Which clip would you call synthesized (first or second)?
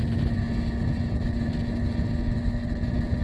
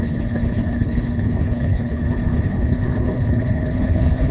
second